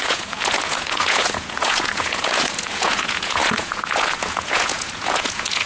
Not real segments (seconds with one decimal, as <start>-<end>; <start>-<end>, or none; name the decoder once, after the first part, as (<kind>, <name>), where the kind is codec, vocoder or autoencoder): 0.0-5.7 (vocoder, Vocos)